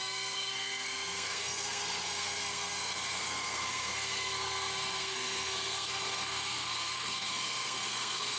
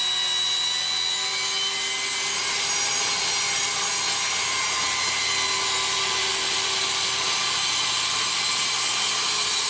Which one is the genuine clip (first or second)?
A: second